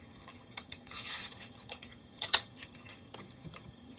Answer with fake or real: fake